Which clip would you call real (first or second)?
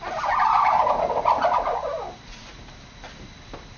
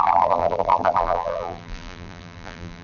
first